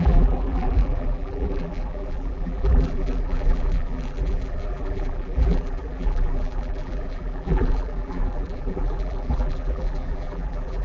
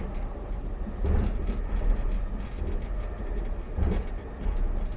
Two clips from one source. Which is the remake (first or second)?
first